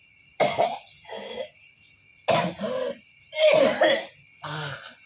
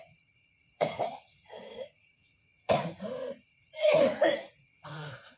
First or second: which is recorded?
first